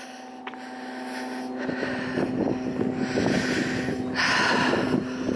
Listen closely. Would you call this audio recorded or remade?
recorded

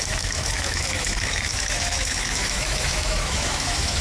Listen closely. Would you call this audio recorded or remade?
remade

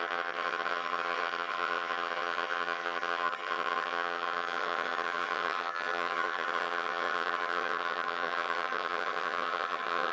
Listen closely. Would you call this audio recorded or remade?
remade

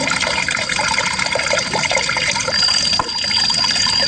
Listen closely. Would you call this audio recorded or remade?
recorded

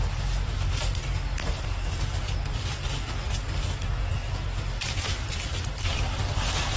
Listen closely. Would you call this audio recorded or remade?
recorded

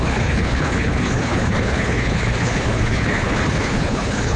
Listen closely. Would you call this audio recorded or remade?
remade